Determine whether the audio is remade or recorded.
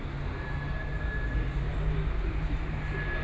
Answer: recorded